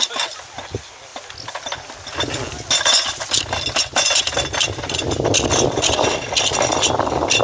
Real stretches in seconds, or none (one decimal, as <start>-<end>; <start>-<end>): 0.0-7.4